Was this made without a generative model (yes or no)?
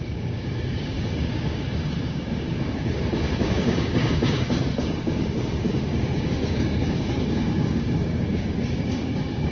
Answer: no